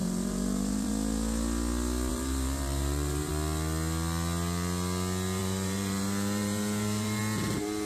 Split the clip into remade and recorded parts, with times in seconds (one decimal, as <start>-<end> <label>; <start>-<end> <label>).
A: 0.0-0.9 remade; 0.9-2.1 recorded; 2.1-3.3 remade; 3.3-5.4 recorded; 5.4-7.2 remade; 7.2-7.9 recorded